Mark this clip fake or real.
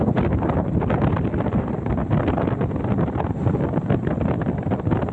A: real